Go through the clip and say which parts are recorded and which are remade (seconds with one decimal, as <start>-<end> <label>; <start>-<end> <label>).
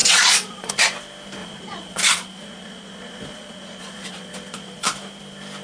0.0-0.7 remade; 0.7-1.4 recorded; 1.4-4.8 remade; 4.8-5.6 recorded